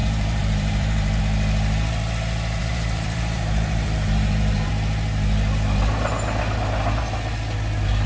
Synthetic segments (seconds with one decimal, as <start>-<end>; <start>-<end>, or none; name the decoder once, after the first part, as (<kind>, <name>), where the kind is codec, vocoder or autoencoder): 0.0-1.2 (vocoder, BigVGAN v2); 2.6-4.7